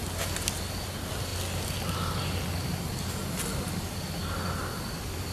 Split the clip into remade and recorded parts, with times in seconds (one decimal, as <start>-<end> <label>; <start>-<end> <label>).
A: 0.0-5.3 recorded